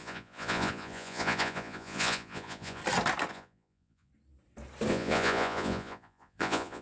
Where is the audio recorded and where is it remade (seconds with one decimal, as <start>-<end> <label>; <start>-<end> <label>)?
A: 0.0-2.8 remade; 2.8-3.3 recorded; 3.3-4.1 remade; 4.1-4.9 recorded; 4.9-6.8 remade